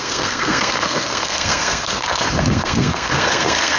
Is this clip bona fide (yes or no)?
no